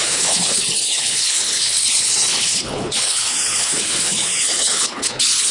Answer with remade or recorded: remade